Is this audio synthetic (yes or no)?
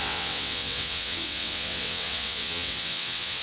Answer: yes